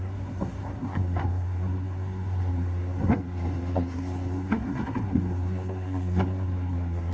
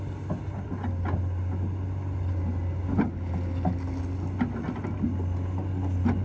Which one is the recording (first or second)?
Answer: second